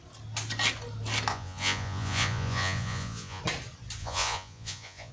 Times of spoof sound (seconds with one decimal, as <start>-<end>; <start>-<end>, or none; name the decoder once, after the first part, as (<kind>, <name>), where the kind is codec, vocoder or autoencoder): 1.3-3.4 (vocoder, Vocos); 4.0-5.1